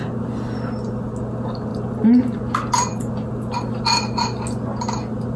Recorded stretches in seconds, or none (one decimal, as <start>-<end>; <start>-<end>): 0.0-5.4